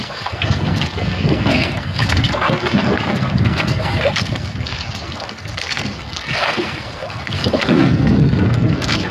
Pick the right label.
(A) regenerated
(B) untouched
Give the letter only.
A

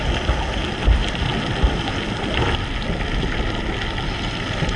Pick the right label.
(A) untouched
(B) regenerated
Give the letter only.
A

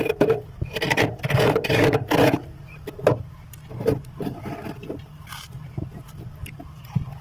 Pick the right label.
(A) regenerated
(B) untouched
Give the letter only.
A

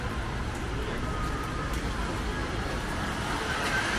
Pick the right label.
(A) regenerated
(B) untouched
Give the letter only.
B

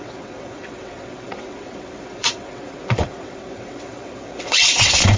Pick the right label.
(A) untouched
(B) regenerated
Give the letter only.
B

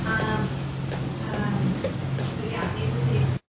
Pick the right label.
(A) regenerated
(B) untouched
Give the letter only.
B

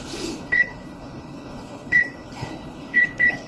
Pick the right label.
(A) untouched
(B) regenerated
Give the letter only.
B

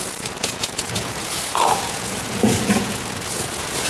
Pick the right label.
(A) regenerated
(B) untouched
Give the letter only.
A